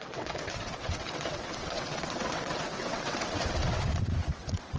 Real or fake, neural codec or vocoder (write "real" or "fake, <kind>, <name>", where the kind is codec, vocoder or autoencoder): fake, vocoder, WaveNeXt